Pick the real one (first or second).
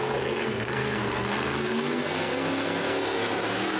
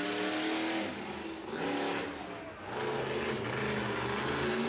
second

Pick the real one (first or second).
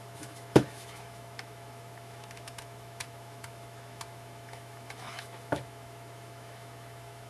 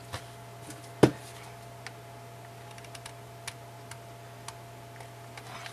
second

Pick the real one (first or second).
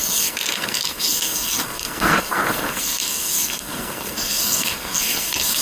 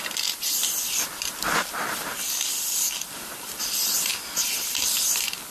second